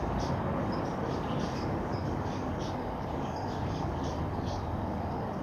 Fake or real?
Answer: fake